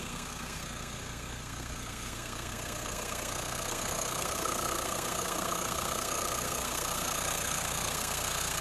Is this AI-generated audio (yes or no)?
yes